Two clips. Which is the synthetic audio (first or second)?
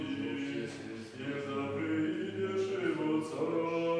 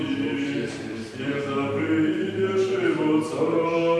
second